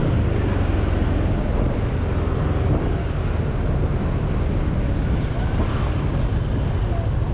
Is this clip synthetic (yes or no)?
no